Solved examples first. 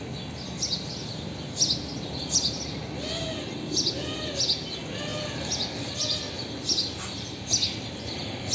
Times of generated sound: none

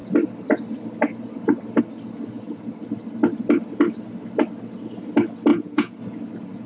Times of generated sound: 5.5-6.0 (vocoder, Vocos)

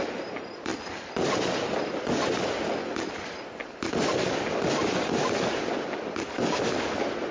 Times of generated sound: none

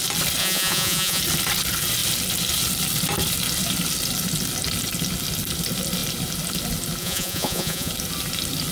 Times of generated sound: 0.4-1.2 (vocoder, Vocos); 7.0-7.9